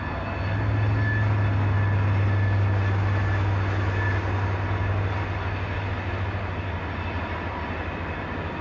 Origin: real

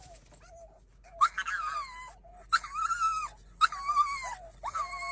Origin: real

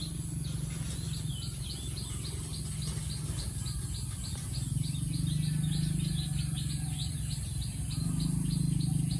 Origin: real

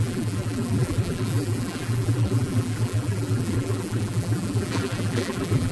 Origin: fake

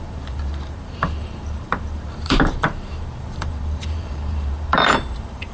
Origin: fake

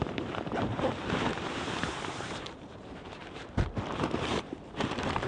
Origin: fake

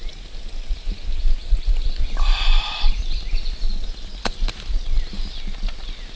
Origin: real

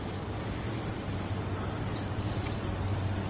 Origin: real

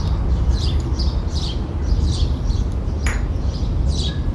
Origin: fake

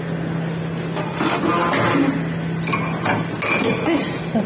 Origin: real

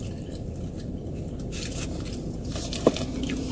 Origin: fake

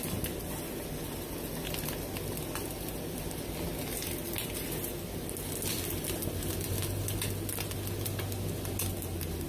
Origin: real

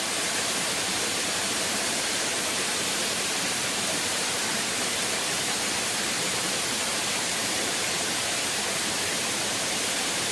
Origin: fake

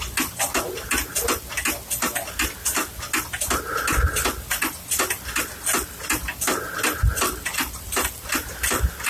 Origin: real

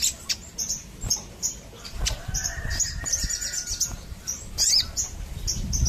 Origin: fake